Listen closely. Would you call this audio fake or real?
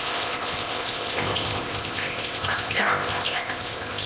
fake